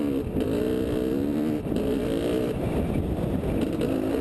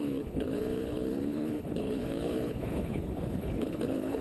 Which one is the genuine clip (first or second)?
first